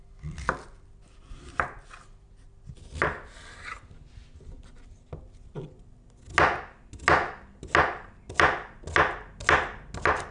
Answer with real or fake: real